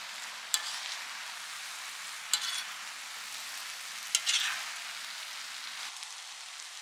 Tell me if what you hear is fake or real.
real